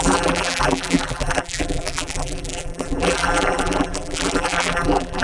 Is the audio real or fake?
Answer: fake